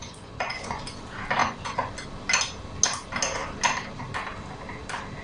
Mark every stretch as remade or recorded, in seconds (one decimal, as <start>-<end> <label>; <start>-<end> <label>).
0.0-0.8 remade; 0.8-1.4 recorded; 1.4-1.9 remade; 1.9-5.2 recorded